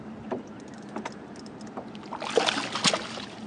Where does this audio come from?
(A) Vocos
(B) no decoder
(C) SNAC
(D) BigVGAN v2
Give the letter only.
B